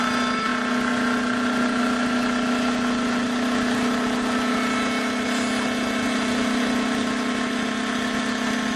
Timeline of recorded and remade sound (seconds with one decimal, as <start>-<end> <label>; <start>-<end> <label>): 0.0-8.8 recorded